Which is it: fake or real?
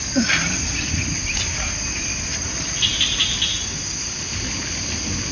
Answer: real